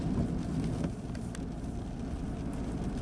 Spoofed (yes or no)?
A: no